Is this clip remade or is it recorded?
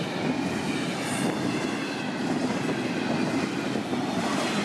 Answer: recorded